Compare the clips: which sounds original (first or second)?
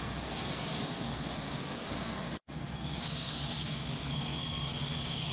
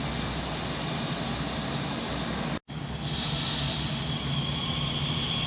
second